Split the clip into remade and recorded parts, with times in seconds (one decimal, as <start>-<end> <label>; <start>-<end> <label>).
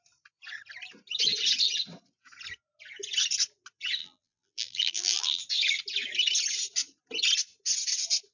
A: 0.0-4.0 recorded; 4.0-5.4 remade; 5.4-8.3 recorded